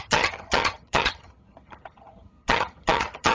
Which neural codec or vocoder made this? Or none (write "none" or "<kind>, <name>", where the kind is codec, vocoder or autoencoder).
vocoder, HiFi-GAN